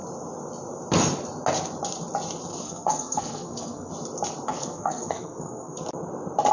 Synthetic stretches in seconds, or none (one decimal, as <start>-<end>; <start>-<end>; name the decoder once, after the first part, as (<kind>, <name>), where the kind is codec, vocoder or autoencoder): 2.5-3.9 (codec, SNAC); 4.5-5.8